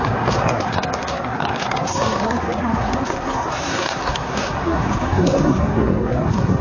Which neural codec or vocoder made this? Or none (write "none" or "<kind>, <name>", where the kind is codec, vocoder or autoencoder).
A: codec, SNAC